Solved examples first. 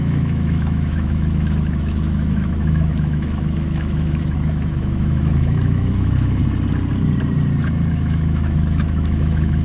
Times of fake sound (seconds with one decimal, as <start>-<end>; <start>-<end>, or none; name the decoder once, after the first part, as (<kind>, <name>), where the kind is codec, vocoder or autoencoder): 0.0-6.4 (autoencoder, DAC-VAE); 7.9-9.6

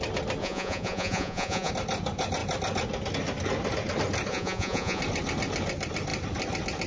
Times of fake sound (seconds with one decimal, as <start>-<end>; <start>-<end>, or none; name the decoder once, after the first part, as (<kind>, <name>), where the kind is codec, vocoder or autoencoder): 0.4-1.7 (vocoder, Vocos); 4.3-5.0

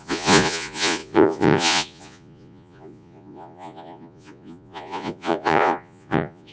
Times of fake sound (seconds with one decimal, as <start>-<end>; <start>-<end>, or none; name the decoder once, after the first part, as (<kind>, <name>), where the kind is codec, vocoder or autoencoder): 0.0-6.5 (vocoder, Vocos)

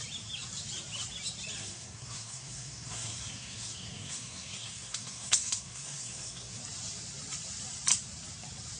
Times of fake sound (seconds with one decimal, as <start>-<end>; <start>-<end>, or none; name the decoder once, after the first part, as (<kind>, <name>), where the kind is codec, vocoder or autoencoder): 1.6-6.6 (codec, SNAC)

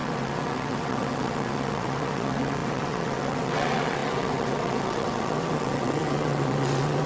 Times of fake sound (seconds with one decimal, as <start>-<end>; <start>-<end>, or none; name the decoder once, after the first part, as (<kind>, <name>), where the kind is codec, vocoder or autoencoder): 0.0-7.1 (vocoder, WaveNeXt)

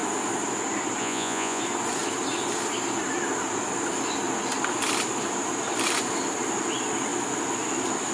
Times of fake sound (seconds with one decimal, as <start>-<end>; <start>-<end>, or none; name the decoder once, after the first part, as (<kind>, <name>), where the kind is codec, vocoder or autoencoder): 1.0-1.6 (vocoder, Vocos)

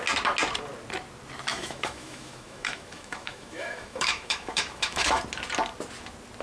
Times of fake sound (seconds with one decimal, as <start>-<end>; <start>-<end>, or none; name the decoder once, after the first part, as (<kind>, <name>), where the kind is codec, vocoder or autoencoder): 1.5-5.2 (autoencoder, DAC-VAE)

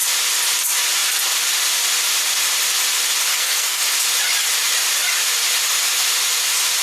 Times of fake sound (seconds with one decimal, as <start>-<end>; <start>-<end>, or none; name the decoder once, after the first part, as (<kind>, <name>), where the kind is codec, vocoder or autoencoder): 3.3-3.8 (codec, SNAC)